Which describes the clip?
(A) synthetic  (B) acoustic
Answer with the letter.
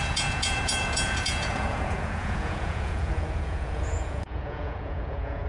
A